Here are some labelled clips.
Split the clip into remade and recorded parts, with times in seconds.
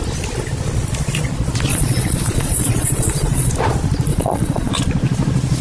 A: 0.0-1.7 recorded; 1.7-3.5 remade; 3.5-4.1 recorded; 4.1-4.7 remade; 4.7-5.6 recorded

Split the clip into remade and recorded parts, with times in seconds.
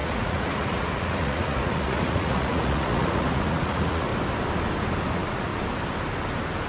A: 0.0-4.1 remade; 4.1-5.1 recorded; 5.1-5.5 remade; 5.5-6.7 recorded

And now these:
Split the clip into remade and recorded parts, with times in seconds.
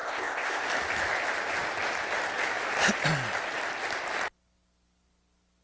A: 0.0-0.6 remade; 0.6-5.6 recorded